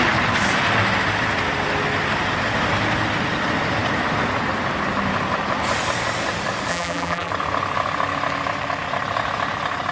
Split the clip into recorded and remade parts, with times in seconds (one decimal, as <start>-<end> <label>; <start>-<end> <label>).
0.0-6.7 recorded; 6.7-7.3 remade; 7.3-9.9 recorded